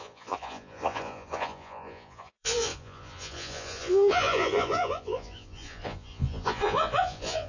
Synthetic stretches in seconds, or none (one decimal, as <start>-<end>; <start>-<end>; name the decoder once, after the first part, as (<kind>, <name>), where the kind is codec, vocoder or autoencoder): 0.0-7.5 (vocoder, Vocos)